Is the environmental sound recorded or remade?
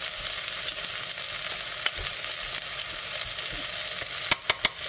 recorded